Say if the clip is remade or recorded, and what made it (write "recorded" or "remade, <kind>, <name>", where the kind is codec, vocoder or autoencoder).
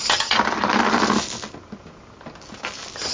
recorded